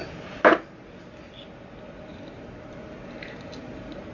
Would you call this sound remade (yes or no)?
no